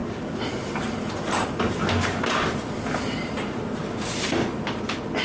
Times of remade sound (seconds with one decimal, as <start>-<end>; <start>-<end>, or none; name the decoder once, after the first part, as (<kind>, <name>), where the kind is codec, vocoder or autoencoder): 0.0-1.8 (vocoder, BigVGAN v2); 3.2-3.8